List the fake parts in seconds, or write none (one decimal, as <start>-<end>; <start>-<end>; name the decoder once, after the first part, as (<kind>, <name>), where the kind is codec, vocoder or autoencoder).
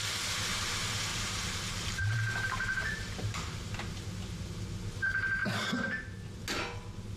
1.1-3.7 (vocoder, BigVGAN v2); 5.4-6.0